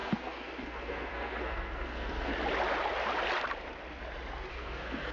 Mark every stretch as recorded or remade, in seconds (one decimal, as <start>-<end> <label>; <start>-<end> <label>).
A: 0.0-2.3 remade; 2.3-4.5 recorded; 4.5-5.1 remade

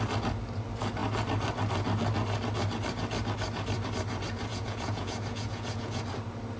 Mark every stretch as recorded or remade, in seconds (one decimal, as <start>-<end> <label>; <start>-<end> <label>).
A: 0.0-4.5 recorded; 4.5-6.0 remade; 6.0-6.6 recorded

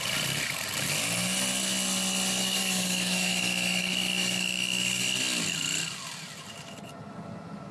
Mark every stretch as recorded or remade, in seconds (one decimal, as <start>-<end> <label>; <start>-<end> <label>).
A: 0.0-2.4 recorded; 2.4-5.0 remade; 5.0-7.7 recorded

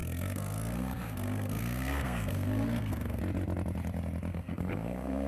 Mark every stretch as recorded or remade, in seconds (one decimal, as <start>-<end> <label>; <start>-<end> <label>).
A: 0.0-3.2 remade; 3.2-4.3 recorded; 4.3-5.3 remade

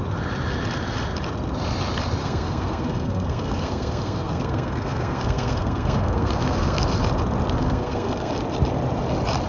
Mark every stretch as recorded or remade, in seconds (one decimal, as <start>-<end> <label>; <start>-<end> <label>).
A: 0.0-2.2 recorded; 2.2-6.8 remade; 6.8-7.6 recorded; 7.6-8.3 remade; 8.3-9.5 recorded

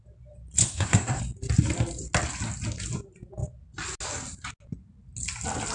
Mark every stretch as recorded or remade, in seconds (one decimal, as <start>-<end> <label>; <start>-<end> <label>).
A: 0.0-0.6 recorded; 0.6-1.2 remade; 1.2-5.7 recorded